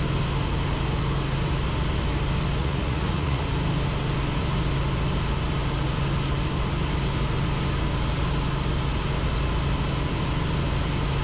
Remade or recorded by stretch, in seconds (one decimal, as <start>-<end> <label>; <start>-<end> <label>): 0.0-2.6 recorded; 2.6-3.4 remade; 3.4-11.2 recorded